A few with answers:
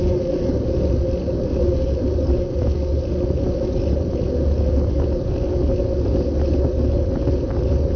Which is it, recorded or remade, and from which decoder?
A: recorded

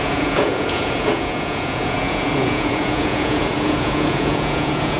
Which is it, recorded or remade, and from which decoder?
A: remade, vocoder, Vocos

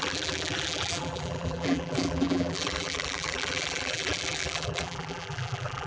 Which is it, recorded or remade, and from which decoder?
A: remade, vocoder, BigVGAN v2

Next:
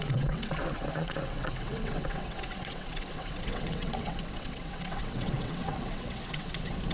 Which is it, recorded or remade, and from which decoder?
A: remade, vocoder, WaveNeXt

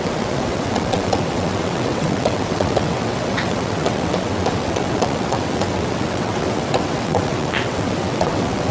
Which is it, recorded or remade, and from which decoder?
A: remade, vocoder, WaveNeXt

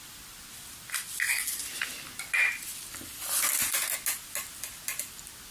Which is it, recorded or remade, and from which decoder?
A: recorded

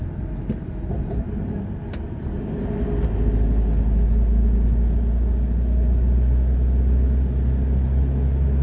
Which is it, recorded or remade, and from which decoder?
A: recorded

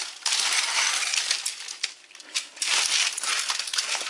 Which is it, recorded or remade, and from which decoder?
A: recorded